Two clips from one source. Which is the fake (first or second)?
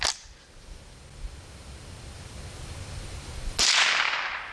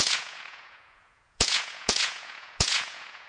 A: second